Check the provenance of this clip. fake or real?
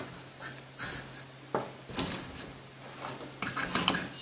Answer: real